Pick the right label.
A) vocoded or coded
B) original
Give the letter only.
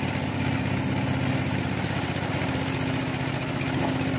B